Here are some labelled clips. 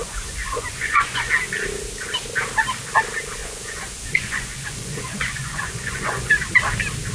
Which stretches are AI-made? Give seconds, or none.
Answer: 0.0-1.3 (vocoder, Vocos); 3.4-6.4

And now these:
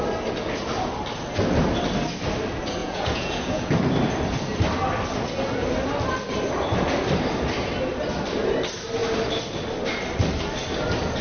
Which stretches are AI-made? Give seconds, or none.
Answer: 2.8-3.8 (vocoder, Vocos)

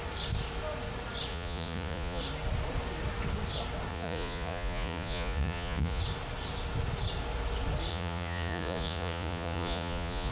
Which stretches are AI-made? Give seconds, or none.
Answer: 1.3-2.2 (vocoder, Vocos); 3.9-6.0; 7.9-10.3